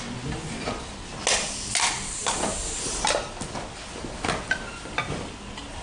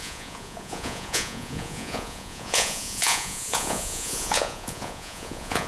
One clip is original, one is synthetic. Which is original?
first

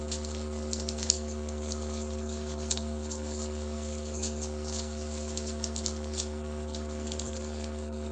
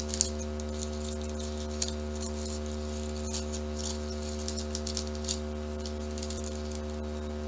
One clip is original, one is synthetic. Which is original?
second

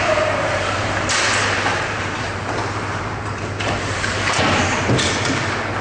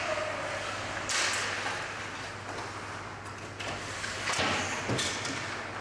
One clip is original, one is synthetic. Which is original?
second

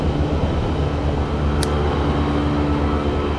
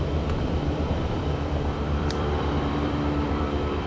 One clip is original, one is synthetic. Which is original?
first